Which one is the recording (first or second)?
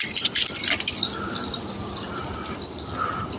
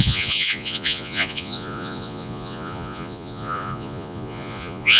first